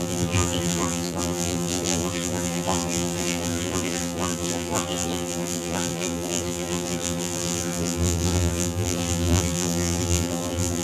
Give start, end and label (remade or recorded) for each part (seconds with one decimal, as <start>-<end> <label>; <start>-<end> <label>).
0.0-10.8 remade